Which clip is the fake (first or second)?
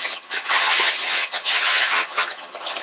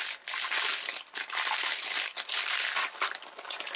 first